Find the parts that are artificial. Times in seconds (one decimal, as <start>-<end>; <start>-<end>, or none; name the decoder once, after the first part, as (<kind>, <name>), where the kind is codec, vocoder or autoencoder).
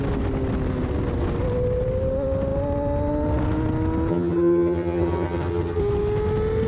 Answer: 4.1-5.8 (vocoder, HiFi-GAN)